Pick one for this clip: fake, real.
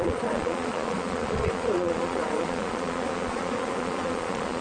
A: fake